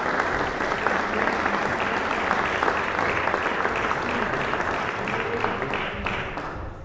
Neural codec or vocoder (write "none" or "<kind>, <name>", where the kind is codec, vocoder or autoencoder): none